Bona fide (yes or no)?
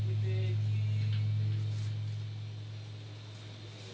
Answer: yes